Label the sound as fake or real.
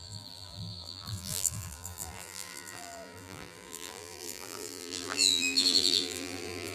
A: fake